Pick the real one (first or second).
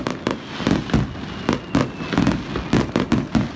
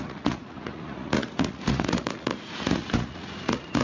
first